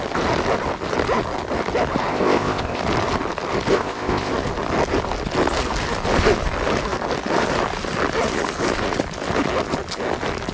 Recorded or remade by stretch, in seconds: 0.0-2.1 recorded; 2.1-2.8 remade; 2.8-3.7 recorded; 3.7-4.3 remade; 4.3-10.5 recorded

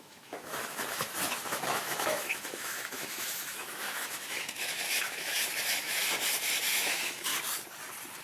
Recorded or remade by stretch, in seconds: 0.0-6.0 remade; 6.0-6.6 recorded; 6.6-7.3 remade; 7.3-8.2 recorded

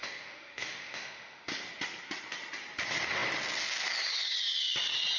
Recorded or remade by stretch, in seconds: 0.0-1.5 remade; 1.5-5.2 recorded

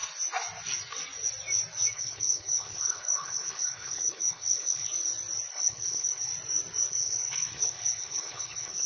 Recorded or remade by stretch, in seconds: 0.0-1.9 recorded; 1.9-4.9 remade; 4.9-5.5 recorded; 5.5-6.3 remade; 6.3-6.9 recorded; 6.9-8.9 remade

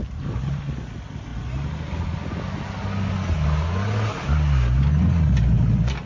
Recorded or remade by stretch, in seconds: 0.0-6.1 recorded

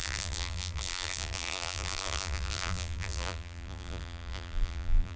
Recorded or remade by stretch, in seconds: 0.0-5.2 remade

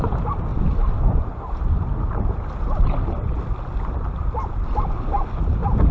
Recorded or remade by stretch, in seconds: 0.0-5.9 recorded

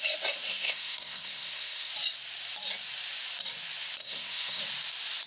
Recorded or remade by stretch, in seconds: 0.0-0.5 recorded; 0.5-1.9 remade; 1.9-4.0 recorded; 4.0-4.6 remade; 4.6-5.3 recorded